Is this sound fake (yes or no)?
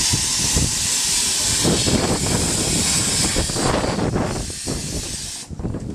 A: no